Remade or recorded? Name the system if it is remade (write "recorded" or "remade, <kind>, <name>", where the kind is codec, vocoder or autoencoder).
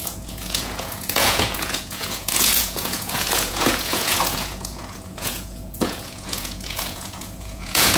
remade, vocoder, Vocos